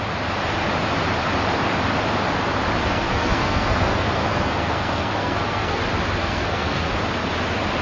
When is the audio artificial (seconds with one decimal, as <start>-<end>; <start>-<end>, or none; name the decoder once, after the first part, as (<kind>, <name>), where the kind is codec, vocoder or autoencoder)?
2.8-5.8 (codec, SNAC); 6.2-6.9